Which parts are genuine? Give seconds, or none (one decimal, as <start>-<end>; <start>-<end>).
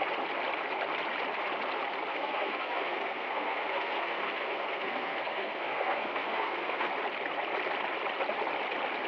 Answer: 0.0-2.1; 6.9-9.1